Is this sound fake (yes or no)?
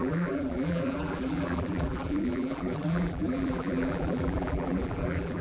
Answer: yes